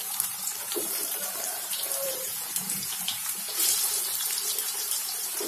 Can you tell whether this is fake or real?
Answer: fake